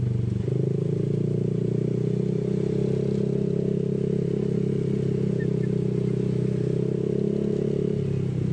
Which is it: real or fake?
real